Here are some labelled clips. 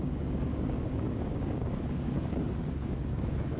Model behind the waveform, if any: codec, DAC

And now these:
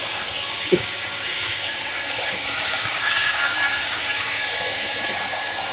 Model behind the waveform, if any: codec, DAC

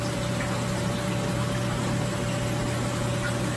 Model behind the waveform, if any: none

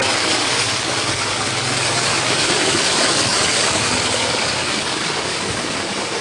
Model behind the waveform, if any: codec, DAC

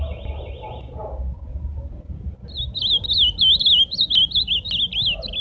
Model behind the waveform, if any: none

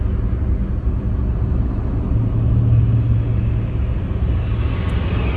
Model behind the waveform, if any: none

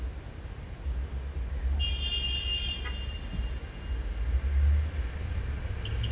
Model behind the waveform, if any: none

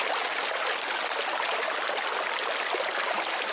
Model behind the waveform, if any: none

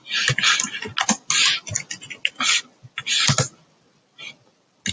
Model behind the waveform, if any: none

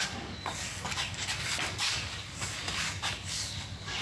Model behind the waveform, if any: codec, DAC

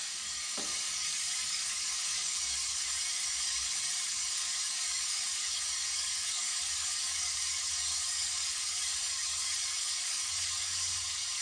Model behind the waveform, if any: codec, DAC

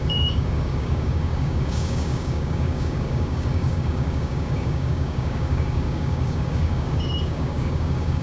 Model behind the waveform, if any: codec, DAC